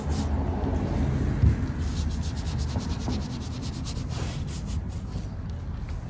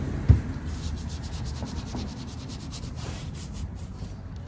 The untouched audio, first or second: first